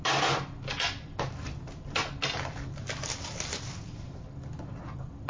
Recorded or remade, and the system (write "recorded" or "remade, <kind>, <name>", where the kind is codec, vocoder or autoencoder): recorded